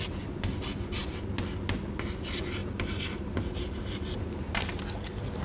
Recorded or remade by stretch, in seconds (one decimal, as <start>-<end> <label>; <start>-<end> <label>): 0.0-2.6 recorded; 2.6-4.8 remade; 4.8-5.4 recorded